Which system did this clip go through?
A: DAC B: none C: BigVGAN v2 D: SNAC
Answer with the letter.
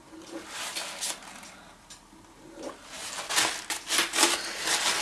B